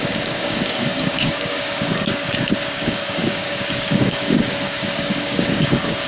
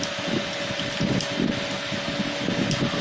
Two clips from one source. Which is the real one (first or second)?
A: second